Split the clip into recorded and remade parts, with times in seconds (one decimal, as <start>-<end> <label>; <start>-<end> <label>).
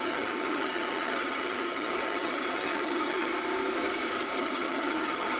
0.0-3.3 remade; 3.3-4.4 recorded; 4.4-5.4 remade